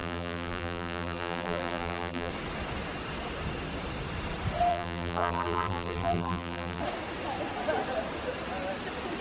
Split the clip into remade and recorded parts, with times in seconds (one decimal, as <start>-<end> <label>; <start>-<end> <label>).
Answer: 0.0-2.3 remade; 2.3-4.7 recorded; 4.7-6.8 remade; 6.8-9.2 recorded